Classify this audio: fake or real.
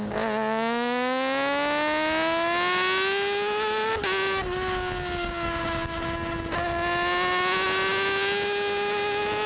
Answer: real